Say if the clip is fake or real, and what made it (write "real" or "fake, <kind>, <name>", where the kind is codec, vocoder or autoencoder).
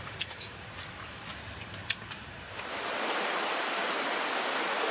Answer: real